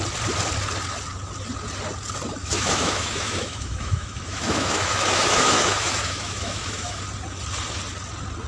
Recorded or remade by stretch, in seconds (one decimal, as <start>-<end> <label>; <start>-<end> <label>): 0.0-2.4 recorded; 2.4-7.0 remade; 7.0-8.5 recorded